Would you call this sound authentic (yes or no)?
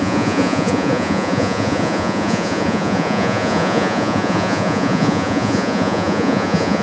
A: no